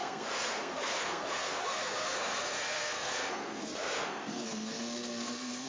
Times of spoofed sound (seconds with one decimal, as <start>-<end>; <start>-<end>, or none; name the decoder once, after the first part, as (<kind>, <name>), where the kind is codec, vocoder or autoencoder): 0.0-5.7 (codec, SNAC)